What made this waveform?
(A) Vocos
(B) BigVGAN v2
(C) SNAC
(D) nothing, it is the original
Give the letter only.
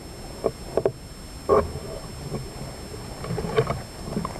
D